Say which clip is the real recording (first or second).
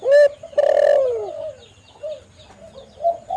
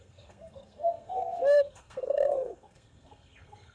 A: first